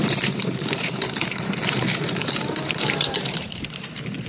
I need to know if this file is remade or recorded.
remade